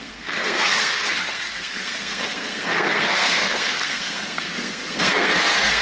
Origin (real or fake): fake